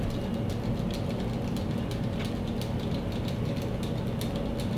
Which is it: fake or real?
real